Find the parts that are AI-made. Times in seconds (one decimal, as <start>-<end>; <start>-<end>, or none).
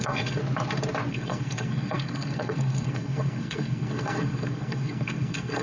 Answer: 0.0-0.4; 1.1-5.6